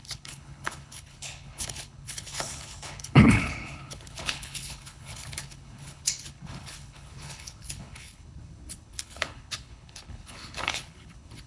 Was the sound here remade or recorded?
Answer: remade